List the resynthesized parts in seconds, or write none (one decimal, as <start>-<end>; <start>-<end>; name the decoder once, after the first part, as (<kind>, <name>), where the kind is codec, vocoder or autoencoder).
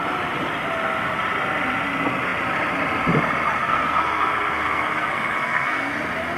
3.6-5.9 (codec, SNAC)